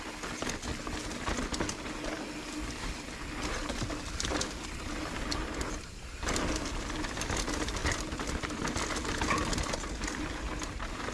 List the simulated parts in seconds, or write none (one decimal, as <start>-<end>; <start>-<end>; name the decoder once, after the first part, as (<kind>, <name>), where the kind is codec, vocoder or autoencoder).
none